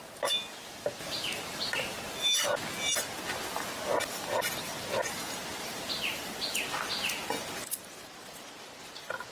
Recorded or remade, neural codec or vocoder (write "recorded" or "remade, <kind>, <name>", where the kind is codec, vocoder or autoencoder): recorded